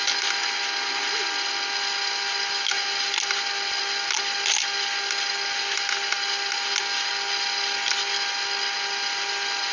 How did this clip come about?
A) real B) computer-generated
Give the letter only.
A